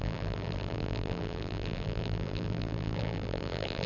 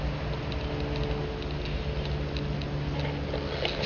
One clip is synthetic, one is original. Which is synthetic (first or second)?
first